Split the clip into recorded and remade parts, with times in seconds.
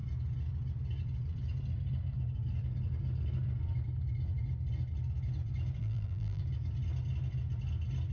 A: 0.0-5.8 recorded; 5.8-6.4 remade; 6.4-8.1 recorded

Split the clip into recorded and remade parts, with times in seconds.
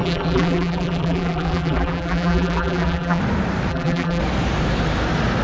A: 0.0-3.2 remade; 3.2-3.7 recorded; 3.7-4.2 remade; 4.2-5.4 recorded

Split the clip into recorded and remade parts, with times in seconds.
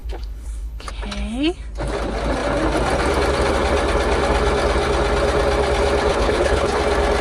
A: 0.0-0.9 remade; 0.9-6.1 recorded; 6.1-6.8 remade; 6.8-7.2 recorded